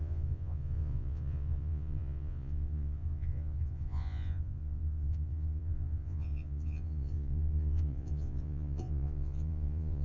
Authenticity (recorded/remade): remade